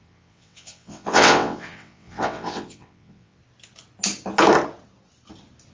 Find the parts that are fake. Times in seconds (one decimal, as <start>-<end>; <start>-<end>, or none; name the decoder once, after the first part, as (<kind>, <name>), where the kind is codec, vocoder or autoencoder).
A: 0.0-3.4 (vocoder, WaveNeXt)